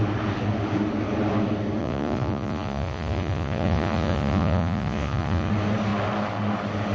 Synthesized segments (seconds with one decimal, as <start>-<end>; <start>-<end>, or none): 1.8-5.5

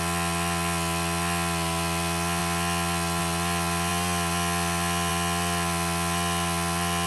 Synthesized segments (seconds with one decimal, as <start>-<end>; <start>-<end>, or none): none

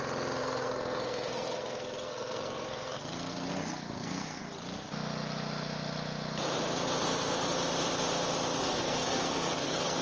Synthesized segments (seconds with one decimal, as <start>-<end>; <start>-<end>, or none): 0.4-4.4; 8.6-10.0

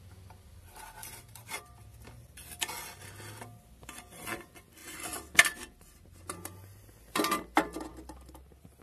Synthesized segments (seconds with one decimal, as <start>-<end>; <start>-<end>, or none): 1.0-1.7

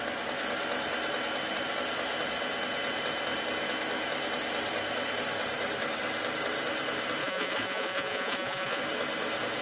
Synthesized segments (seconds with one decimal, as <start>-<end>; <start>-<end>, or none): 7.2-8.8

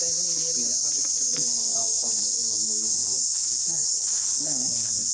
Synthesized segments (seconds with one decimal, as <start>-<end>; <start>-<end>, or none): 1.3-5.1